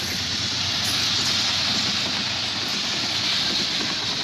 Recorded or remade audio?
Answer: recorded